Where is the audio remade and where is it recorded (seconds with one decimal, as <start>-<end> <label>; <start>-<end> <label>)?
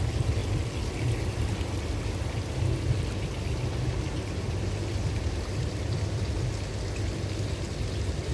0.0-8.3 recorded